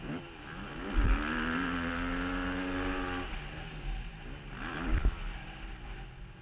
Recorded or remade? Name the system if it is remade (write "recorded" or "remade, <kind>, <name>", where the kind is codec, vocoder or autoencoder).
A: recorded